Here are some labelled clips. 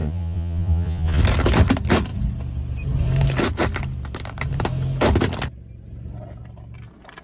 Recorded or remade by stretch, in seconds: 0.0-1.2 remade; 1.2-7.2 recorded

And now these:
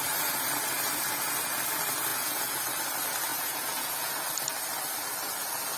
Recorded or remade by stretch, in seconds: 0.0-2.1 recorded; 2.1-2.6 remade; 2.6-3.3 recorded; 3.3-4.1 remade; 4.1-5.8 recorded

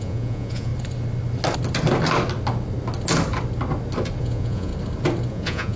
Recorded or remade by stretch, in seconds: 0.0-0.7 remade; 0.7-4.2 recorded; 4.2-4.7 remade; 4.7-5.3 recorded; 5.3-5.8 remade

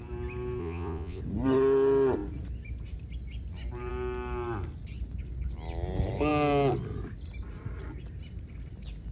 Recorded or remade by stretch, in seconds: 0.0-0.6 recorded; 0.6-1.2 remade; 1.2-9.1 recorded

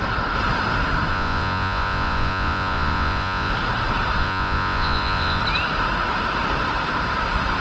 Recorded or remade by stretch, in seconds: 0.0-1.1 recorded; 1.1-3.5 remade; 3.5-4.2 recorded; 4.2-5.4 remade; 5.4-7.6 recorded

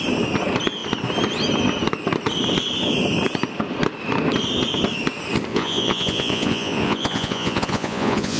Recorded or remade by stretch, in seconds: 0.0-5.5 recorded; 5.5-8.4 remade

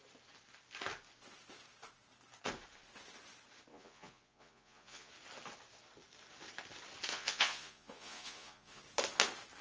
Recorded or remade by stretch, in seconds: 0.0-3.7 recorded; 3.7-5.1 remade; 5.1-7.1 recorded; 7.1-8.8 remade; 8.8-9.6 recorded